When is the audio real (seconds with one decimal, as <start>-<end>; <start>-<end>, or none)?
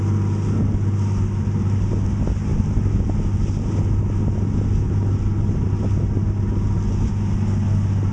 0.0-8.1